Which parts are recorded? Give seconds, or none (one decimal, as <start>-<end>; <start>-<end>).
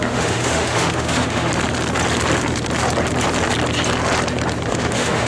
1.5-4.7